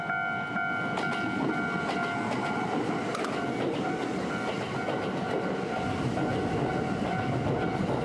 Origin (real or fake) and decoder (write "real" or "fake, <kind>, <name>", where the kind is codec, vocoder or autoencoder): real